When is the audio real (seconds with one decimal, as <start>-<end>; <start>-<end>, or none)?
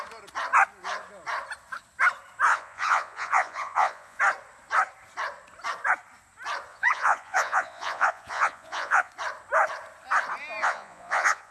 0.0-2.5; 4.2-6.7; 9.1-10.6